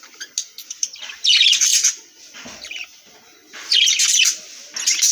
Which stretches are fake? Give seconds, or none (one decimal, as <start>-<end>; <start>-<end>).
0.6-1.1